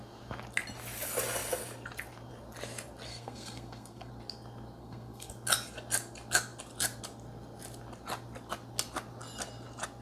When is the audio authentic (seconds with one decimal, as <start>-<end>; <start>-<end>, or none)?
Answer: 0.0-3.1; 4.1-4.8; 5.3-10.0